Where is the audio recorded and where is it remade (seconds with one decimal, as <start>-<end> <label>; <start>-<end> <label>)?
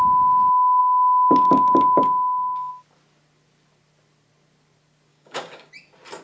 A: 0.0-0.8 recorded; 0.8-2.7 remade; 2.7-5.1 recorded; 5.1-5.7 remade; 5.7-6.2 recorded